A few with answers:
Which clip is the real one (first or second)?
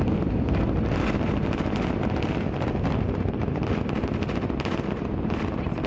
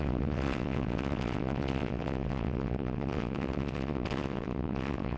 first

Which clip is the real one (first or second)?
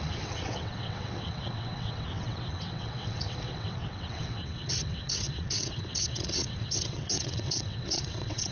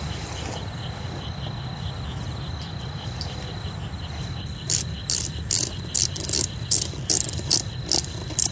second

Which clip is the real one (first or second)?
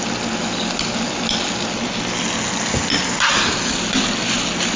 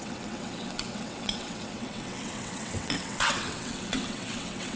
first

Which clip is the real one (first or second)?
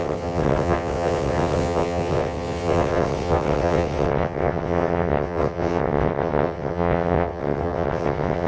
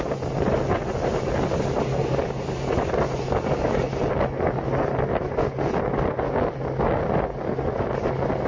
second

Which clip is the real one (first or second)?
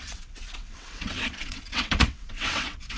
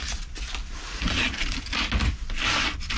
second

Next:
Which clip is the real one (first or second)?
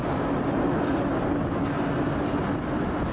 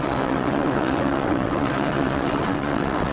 first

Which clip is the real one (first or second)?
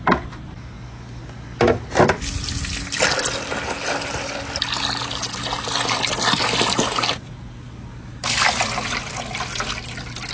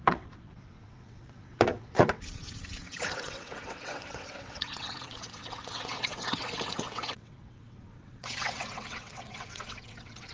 first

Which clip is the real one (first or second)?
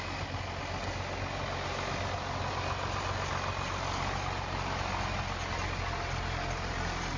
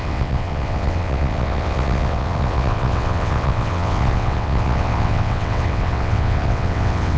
first